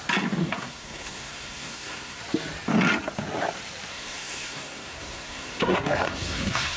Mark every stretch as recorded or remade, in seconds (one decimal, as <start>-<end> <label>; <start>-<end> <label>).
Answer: 0.0-0.4 recorded; 0.4-2.2 remade; 2.2-3.9 recorded; 3.9-6.8 remade